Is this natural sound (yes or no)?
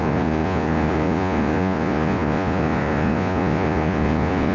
no